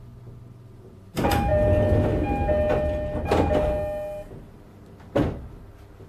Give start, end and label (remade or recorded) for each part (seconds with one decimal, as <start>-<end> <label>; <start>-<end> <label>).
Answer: 0.0-6.1 recorded